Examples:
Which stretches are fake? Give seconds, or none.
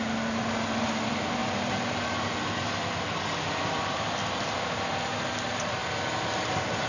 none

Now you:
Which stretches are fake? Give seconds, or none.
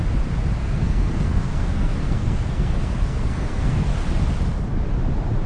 0.6-3.9 (codec, SNAC)